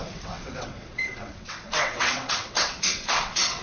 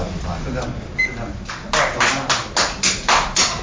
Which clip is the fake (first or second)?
first